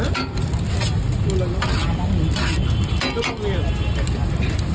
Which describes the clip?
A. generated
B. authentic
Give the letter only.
B